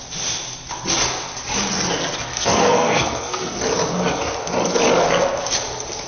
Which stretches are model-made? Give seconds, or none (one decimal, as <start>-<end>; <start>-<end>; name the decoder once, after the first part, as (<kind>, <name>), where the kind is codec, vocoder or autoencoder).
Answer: 2.3-3.6 (codec, SNAC)